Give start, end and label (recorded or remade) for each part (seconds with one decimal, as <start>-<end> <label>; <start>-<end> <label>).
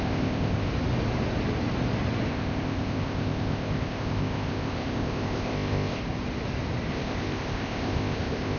0.0-0.7 remade; 0.7-2.3 recorded; 2.3-6.0 remade; 6.0-6.9 recorded; 6.9-8.6 remade